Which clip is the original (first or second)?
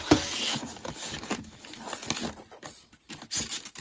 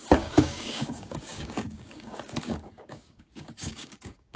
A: first